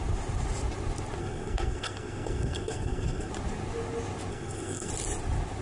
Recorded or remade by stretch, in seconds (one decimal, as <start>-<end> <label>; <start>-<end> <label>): 0.0-1.2 recorded; 1.2-3.3 remade; 3.3-4.3 recorded; 4.3-4.9 remade; 4.9-5.6 recorded